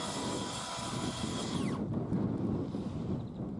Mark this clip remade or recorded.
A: recorded